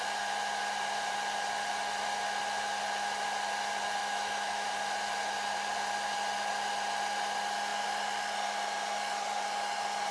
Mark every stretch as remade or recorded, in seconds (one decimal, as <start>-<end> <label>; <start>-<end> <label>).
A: 0.0-4.0 recorded; 4.0-4.7 remade; 4.7-10.1 recorded